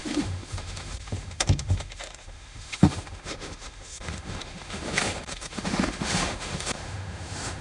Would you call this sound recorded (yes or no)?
no